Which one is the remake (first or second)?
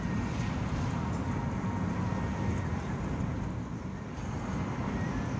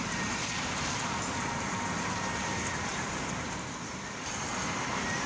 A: second